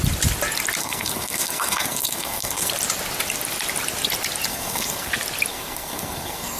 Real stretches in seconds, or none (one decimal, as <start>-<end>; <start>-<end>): 0.0-0.8; 2.7-4.5; 5.1-5.5